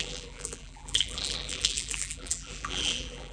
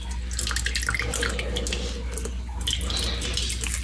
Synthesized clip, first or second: first